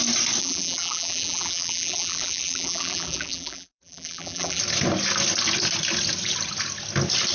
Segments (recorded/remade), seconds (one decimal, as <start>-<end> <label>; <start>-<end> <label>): 0.0-0.4 recorded; 0.4-4.6 remade; 4.6-7.3 recorded